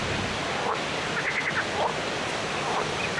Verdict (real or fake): real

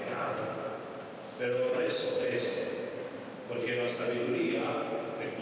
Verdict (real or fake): real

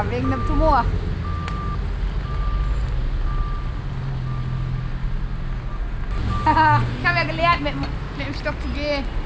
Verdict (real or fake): real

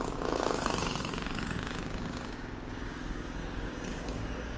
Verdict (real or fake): fake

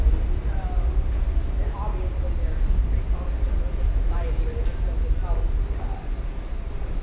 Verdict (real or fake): real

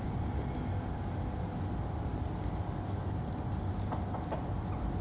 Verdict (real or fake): real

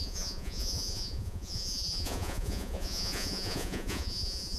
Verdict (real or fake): fake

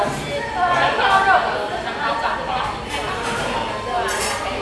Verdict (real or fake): real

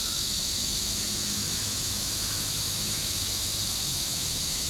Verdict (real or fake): fake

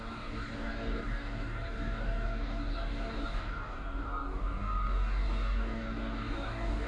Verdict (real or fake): fake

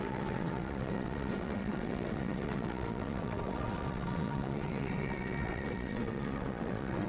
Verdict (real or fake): fake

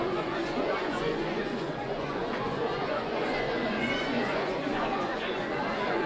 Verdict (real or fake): fake